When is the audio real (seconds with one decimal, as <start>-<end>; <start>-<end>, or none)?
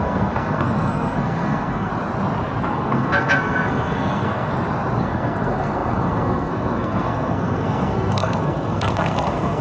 1.9-2.7; 4.5-5.0